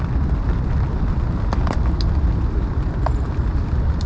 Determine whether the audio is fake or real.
real